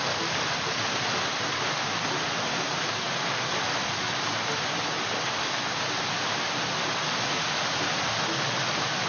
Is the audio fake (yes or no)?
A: no